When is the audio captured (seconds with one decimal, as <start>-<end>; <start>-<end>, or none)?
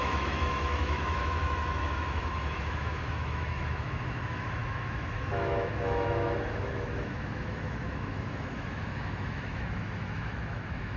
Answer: none